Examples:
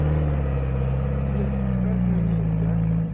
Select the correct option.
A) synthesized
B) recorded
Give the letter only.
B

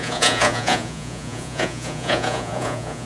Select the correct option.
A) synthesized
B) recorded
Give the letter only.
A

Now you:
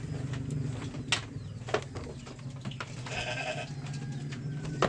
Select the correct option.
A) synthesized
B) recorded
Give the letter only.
B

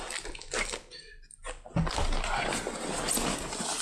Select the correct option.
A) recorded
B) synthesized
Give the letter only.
A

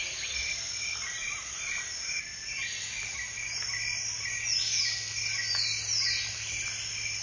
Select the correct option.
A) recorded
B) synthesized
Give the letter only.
A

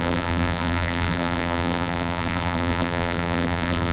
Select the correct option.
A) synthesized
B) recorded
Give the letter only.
A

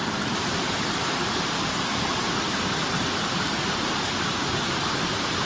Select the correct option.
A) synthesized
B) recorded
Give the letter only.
A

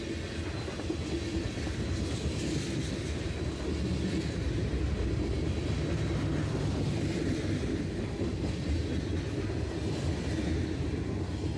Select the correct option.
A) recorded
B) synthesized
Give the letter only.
A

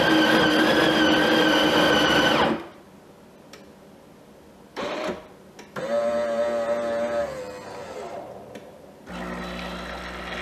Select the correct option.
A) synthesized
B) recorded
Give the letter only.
B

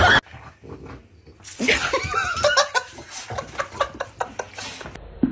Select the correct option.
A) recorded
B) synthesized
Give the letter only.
A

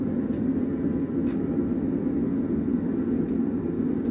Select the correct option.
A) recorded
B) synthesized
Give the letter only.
A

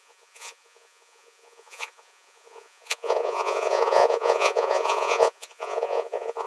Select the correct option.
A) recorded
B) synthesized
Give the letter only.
B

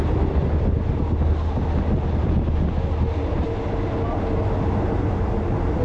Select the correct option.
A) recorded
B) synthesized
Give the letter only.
A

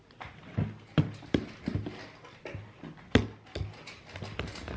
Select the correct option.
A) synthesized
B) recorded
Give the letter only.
B